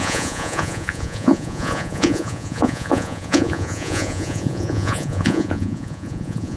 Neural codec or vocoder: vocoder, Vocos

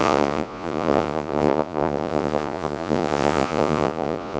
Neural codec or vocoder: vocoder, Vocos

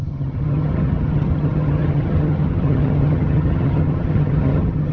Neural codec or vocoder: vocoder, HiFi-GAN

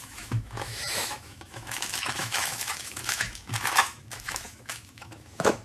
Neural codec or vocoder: autoencoder, DAC-VAE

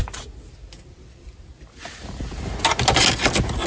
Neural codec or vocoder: none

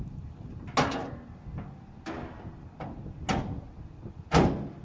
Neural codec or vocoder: none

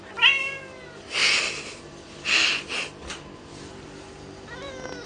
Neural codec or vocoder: none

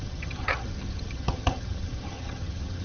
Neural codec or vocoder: vocoder, HiFi-GAN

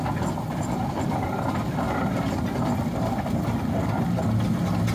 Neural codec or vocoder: none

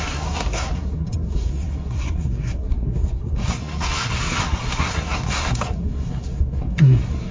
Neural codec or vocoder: codec, SNAC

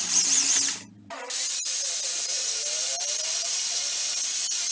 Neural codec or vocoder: none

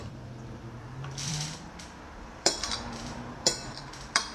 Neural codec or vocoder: vocoder, BigVGAN v2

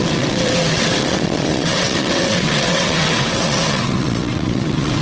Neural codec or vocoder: vocoder, WaveNeXt